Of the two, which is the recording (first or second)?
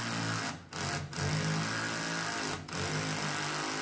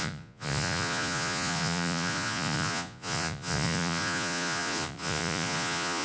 first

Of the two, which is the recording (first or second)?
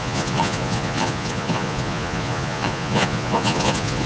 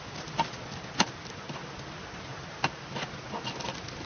second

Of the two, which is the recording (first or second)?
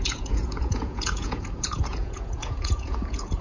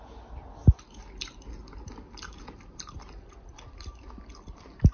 second